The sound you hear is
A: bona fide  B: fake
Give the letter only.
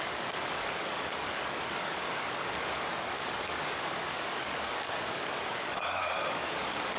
B